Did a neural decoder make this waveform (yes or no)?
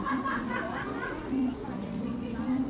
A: yes